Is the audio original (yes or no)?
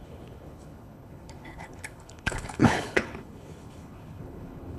no